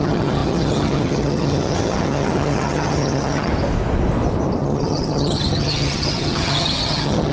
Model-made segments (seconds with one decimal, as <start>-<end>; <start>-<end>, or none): 0.0-3.5; 4.6-7.3